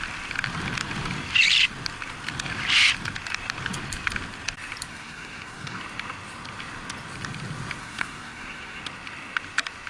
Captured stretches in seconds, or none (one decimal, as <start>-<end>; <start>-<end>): 0.0-4.9; 5.8-7.8; 8.8-9.9